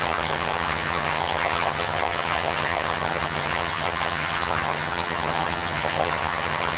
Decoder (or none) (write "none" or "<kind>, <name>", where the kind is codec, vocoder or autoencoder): vocoder, HiFi-GAN